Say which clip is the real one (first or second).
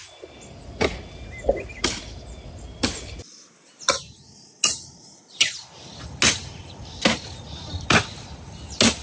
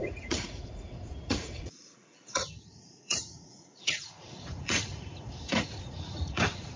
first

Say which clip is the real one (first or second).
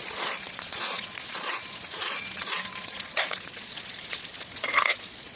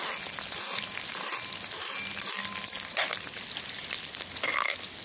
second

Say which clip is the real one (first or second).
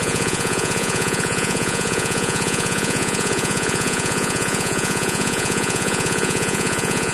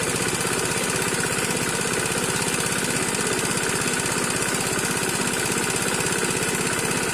second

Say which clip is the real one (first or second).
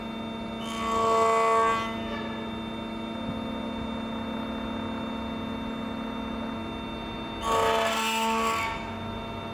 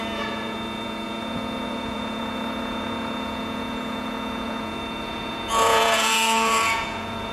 first